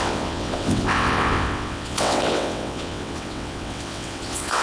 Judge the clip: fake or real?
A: fake